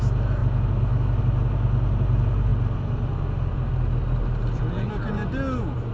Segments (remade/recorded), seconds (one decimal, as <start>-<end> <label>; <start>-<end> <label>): 0.0-5.9 recorded